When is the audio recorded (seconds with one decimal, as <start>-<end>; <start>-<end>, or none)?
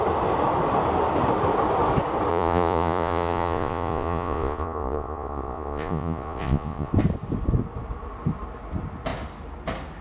0.0-2.3; 6.9-10.0